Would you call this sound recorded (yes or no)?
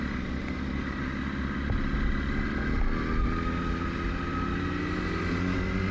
yes